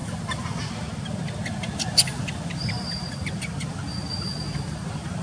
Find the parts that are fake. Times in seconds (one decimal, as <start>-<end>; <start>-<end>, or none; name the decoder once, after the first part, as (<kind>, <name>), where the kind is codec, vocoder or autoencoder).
none